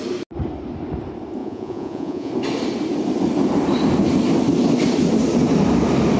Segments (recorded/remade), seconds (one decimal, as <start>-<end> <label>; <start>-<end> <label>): 0.0-1.4 recorded; 1.4-2.3 remade; 2.3-6.2 recorded